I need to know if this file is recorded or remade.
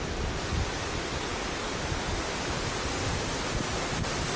recorded